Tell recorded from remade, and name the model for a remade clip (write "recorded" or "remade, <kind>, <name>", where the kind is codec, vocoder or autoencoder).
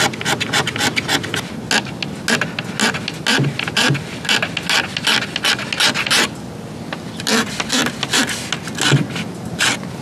recorded